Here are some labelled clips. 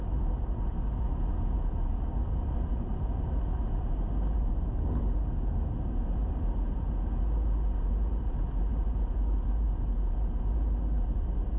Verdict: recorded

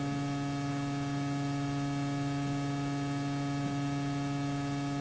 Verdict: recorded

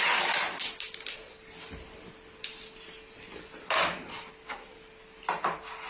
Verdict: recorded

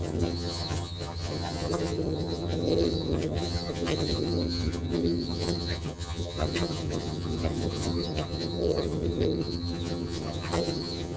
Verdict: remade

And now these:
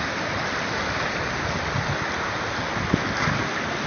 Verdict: recorded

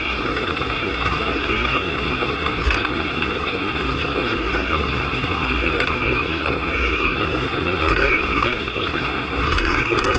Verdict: remade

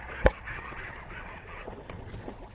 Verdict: remade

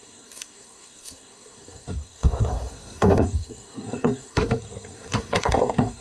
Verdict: remade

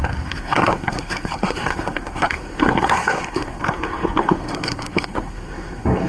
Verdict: remade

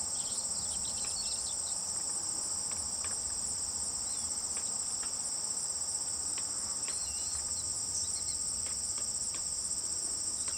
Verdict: recorded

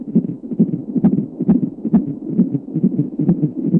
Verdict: remade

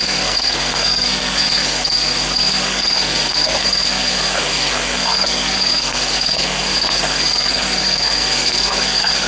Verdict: remade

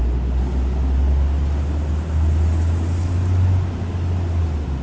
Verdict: recorded